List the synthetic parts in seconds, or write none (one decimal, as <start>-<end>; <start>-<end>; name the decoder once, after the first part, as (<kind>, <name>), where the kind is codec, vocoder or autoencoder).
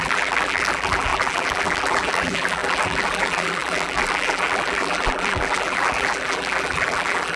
0.0-7.4 (vocoder, BigVGAN v2)